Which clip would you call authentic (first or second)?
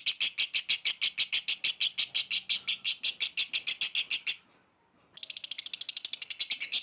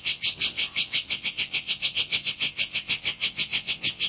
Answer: first